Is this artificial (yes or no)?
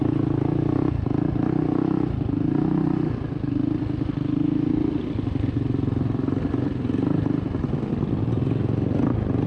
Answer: no